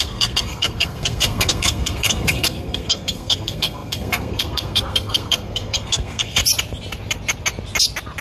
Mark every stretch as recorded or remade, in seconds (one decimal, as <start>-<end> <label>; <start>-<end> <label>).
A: 0.0-6.4 remade; 6.4-8.2 recorded